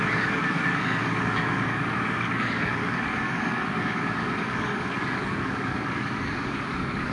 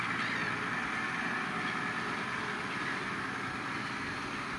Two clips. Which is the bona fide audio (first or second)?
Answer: second